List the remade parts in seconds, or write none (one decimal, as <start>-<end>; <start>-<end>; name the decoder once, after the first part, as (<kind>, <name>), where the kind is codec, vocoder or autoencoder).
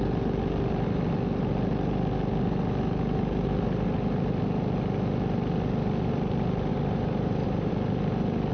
6.7-7.7 (vocoder, BigVGAN v2)